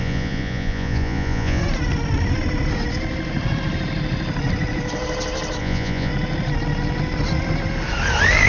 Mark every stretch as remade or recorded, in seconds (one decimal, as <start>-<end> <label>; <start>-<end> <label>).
0.0-1.6 remade; 1.6-5.6 recorded; 5.6-6.1 remade; 6.1-8.5 recorded